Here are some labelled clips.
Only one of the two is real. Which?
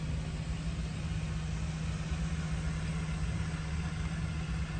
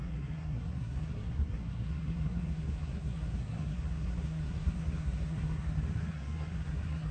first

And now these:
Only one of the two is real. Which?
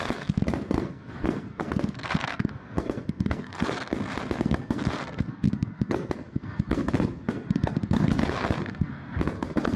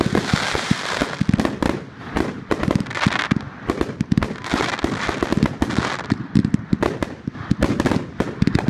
second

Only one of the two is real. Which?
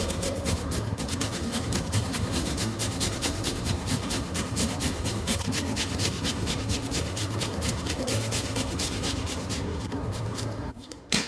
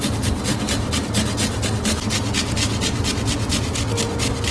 second